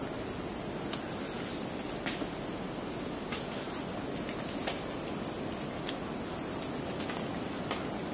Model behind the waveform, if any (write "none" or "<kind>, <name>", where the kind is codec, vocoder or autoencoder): none